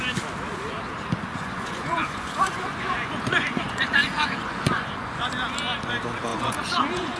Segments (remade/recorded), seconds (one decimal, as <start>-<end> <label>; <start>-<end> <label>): 0.0-1.3 recorded; 1.3-5.3 remade; 5.3-6.3 recorded; 6.3-7.2 remade

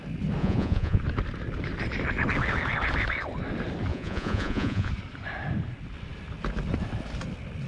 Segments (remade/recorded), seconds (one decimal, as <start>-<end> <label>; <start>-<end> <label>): 0.0-0.4 recorded; 0.4-1.0 remade; 1.0-3.9 recorded; 3.9-4.9 remade; 4.9-7.7 recorded